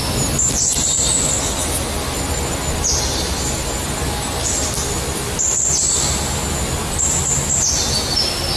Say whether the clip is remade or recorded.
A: recorded